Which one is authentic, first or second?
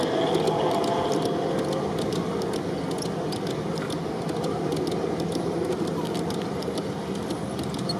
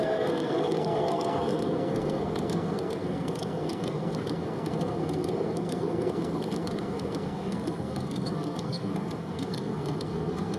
first